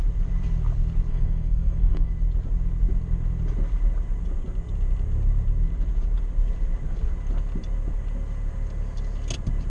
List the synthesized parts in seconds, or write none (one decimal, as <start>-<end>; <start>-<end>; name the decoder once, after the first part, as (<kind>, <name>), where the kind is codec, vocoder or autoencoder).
1.1-2.1 (codec, SNAC)